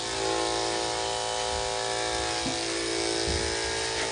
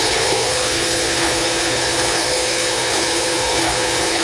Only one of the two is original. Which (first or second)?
first